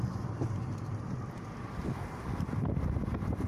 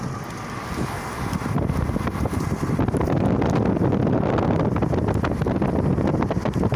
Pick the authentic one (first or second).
second